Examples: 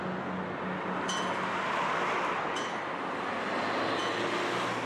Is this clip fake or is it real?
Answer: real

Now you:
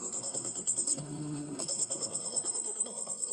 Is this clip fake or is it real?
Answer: fake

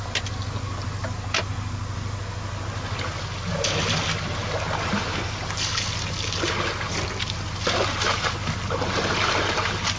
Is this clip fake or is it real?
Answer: real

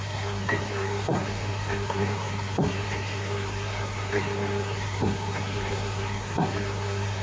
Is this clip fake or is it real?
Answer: fake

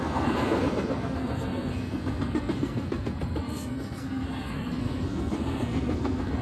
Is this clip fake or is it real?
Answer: fake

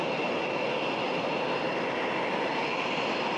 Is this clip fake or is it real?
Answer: real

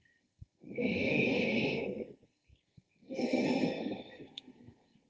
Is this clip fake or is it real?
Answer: fake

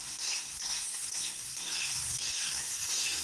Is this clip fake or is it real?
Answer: fake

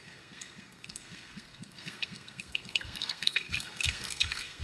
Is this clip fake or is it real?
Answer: fake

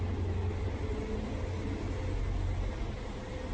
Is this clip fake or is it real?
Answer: real